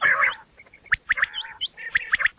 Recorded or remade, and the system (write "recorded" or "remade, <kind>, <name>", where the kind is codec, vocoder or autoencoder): remade, vocoder, BigVGAN v2